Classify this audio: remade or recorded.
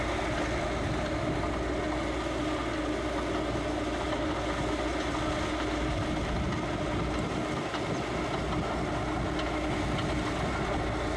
recorded